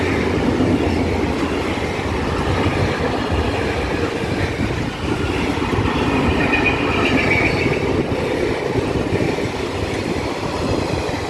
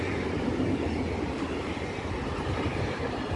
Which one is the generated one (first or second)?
second